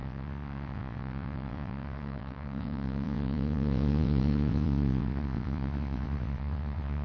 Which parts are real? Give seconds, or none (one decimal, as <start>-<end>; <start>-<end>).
none